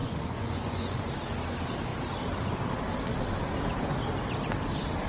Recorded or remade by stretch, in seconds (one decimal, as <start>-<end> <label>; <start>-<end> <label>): 0.0-1.1 remade; 1.1-5.1 recorded